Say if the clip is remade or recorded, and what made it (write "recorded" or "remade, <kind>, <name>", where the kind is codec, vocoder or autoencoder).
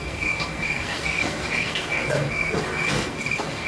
remade, codec, SNAC